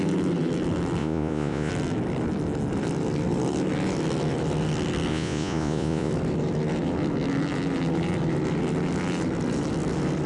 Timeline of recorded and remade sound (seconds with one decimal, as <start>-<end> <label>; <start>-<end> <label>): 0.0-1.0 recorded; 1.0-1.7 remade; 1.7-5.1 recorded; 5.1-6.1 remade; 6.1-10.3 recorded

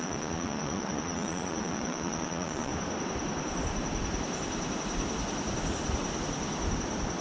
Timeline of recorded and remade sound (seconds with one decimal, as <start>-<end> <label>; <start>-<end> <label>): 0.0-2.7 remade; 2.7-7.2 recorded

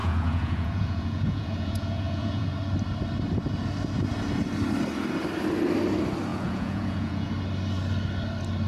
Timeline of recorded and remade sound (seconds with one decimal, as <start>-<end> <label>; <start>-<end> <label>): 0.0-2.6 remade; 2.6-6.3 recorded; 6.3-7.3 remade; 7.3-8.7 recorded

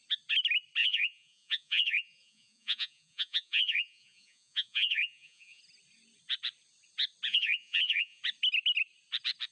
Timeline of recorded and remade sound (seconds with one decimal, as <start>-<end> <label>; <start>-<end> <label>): 0.0-0.8 recorded; 0.8-5.6 remade; 5.6-7.3 recorded; 7.3-8.2 remade; 8.2-9.5 recorded

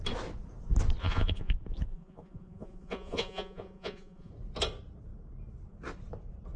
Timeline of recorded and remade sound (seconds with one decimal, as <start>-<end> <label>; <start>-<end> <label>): 0.0-1.0 recorded; 1.0-1.5 remade; 1.5-1.9 recorded; 1.9-4.3 remade; 4.3-6.6 recorded

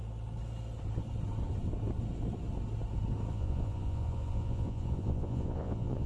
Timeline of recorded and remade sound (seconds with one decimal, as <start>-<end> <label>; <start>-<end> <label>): 0.0-3.3 recorded; 3.3-6.1 remade

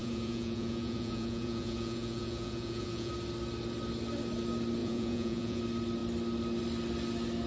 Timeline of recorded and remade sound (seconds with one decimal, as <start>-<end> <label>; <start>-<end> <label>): 0.0-3.1 remade; 3.1-4.8 recorded; 4.8-5.6 remade; 5.6-7.5 recorded

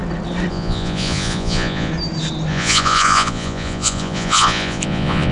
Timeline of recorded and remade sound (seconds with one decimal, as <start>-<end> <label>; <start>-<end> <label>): 0.0-0.5 recorded; 0.5-1.9 remade; 1.9-2.5 recorded; 2.5-5.3 remade